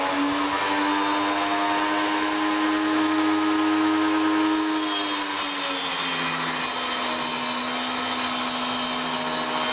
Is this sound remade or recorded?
recorded